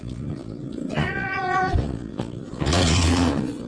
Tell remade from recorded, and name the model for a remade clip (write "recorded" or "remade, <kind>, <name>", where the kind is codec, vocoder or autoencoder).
remade, vocoder, Vocos